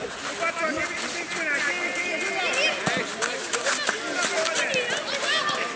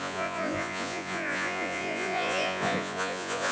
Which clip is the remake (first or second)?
second